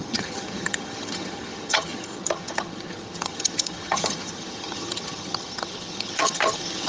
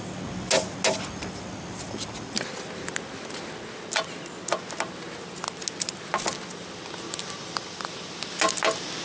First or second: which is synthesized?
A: first